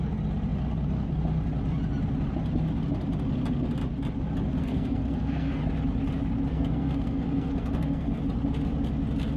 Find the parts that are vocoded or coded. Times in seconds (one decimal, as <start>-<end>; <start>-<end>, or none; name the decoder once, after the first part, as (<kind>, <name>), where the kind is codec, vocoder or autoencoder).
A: 4.6-5.6 (codec, SNAC); 6.5-8.2